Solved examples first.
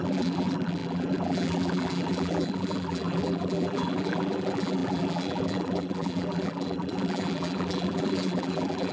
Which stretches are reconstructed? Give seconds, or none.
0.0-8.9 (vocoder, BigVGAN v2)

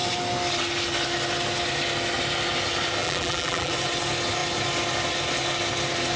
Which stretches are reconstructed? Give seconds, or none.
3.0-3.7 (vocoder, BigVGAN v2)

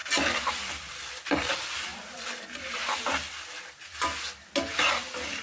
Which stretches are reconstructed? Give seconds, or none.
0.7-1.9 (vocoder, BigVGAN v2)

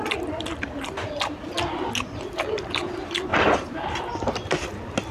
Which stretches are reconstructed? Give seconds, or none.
3.3-3.9 (vocoder, BigVGAN v2)

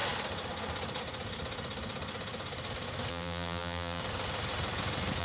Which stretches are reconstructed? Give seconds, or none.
3.1-4.0 (vocoder, BigVGAN v2)

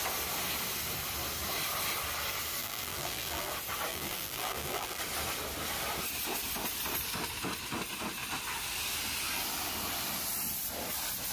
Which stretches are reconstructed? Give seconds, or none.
2.6-3.5 (vocoder, BigVGAN v2); 3.9-5.0

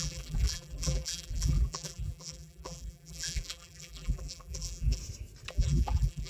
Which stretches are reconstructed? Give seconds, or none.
0.0-5.0 (vocoder, BigVGAN v2); 5.5-6.3